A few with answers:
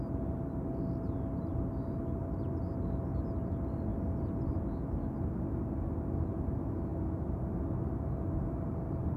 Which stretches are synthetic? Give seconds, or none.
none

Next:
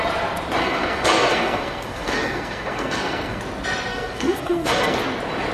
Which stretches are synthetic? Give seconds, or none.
0.6-3.4 (codec, SNAC); 3.9-5.0

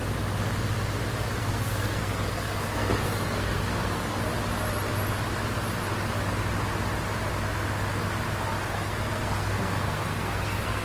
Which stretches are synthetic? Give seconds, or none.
1.4-4.3 (codec, SNAC); 8.7-10.8

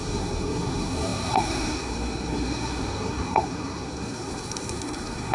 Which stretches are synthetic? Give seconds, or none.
0.0-5.3 (codec, SNAC)